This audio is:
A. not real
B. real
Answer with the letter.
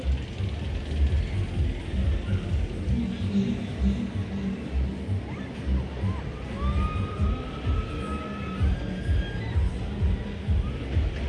B